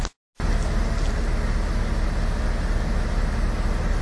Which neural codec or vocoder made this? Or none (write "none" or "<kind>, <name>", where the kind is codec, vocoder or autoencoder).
none